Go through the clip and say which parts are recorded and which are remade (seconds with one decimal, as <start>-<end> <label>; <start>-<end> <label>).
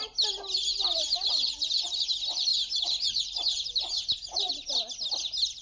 0.0-0.7 recorded; 0.7-2.1 remade; 2.1-2.5 recorded; 2.5-4.5 remade; 4.5-5.6 recorded